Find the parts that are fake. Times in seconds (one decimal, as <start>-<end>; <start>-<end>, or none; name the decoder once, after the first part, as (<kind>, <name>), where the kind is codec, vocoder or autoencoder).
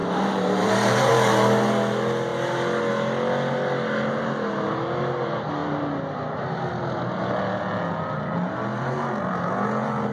0.0-1.1 (vocoder, BigVGAN v2); 8.7-9.5